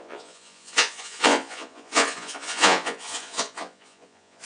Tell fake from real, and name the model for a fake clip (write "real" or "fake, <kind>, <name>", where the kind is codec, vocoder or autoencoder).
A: fake, vocoder, Vocos